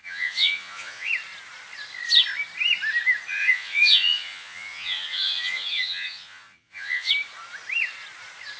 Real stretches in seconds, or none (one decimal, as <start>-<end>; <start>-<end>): 1.1-3.4; 7.1-8.6